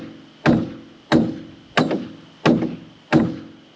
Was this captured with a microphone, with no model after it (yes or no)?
yes